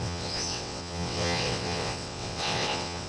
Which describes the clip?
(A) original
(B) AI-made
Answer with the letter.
B